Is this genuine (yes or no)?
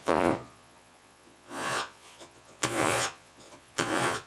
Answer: no